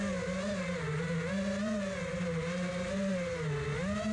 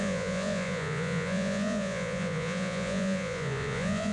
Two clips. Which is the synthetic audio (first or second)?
second